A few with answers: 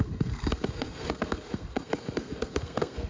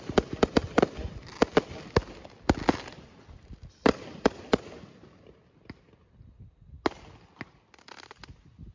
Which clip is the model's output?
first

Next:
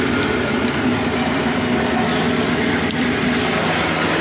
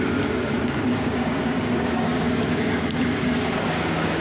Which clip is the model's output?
second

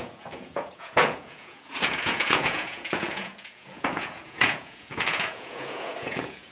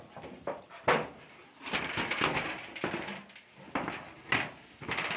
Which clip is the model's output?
first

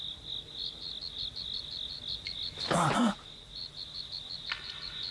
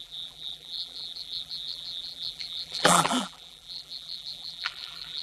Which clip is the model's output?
second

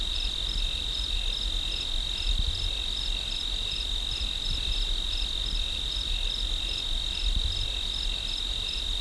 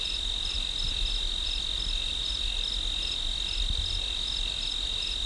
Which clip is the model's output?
first